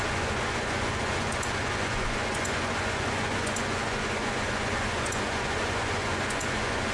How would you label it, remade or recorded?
remade